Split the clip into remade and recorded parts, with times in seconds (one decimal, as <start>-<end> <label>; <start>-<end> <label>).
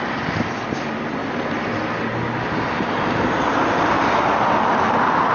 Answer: 0.0-5.3 recorded